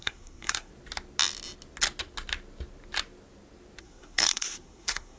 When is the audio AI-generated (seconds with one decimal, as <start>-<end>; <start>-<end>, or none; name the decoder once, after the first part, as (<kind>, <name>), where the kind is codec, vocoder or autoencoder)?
0.0-0.7 (codec, SNAC); 3.8-5.2